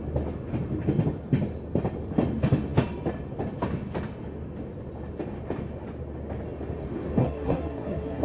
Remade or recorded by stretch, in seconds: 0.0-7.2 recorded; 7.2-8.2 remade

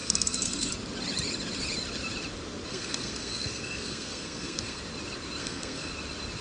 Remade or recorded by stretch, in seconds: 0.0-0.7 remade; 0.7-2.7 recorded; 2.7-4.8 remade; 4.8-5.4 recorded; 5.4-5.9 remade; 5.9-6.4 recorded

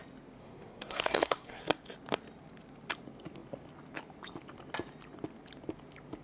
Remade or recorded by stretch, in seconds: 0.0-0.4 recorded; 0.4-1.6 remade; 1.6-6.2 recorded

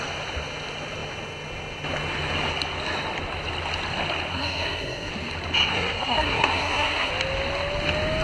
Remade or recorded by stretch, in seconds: 0.0-4.3 recorded; 4.3-5.1 remade; 5.1-5.7 recorded; 5.7-7.1 remade; 7.1-8.2 recorded